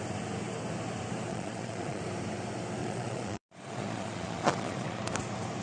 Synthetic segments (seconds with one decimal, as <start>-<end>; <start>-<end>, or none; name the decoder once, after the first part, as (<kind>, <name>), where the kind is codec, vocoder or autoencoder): 1.3-2.0 (vocoder, Vocos); 2.8-5.0